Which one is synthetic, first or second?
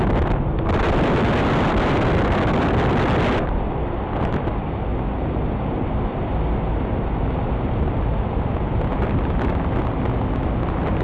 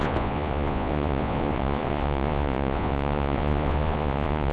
second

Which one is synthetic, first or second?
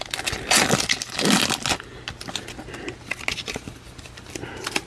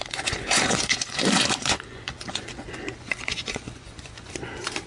second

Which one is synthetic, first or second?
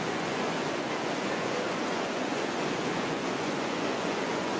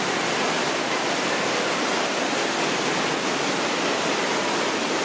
first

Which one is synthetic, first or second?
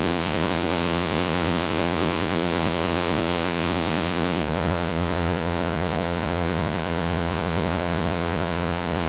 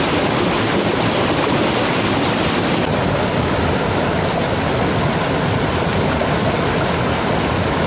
first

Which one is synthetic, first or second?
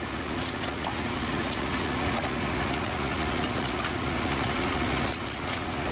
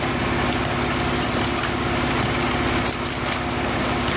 first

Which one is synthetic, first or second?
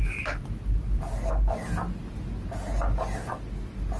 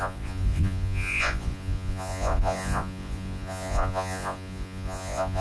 second